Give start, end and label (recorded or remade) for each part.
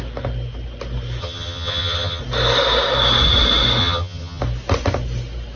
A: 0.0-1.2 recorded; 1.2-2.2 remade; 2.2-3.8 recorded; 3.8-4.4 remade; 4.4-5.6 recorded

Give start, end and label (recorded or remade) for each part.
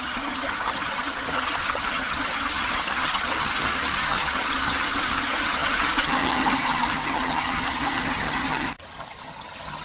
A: 0.0-9.8 remade